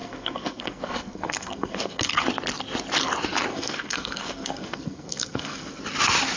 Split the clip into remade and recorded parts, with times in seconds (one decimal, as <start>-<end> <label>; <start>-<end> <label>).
0.0-2.1 remade; 2.1-3.5 recorded; 3.5-5.8 remade; 5.8-6.4 recorded